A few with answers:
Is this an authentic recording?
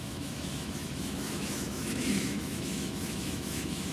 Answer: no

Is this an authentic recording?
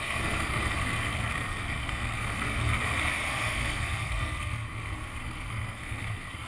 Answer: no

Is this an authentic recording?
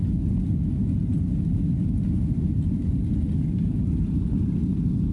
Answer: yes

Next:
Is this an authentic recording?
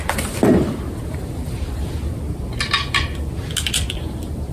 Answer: yes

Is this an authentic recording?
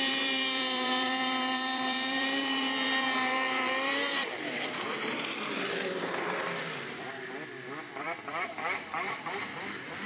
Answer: no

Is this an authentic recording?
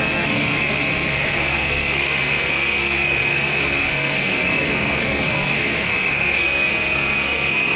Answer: no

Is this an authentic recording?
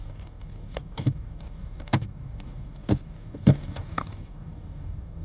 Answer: no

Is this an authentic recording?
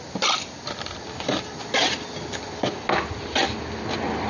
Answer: yes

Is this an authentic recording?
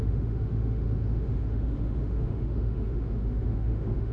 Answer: no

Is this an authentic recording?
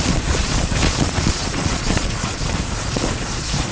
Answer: no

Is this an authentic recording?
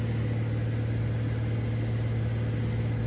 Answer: yes